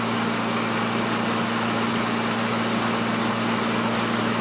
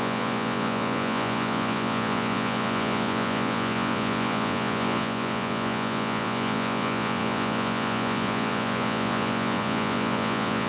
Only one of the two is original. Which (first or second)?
first